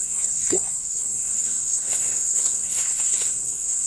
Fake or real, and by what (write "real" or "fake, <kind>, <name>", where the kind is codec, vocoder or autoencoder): fake, codec, SNAC